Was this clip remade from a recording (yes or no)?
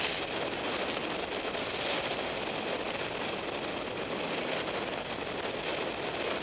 no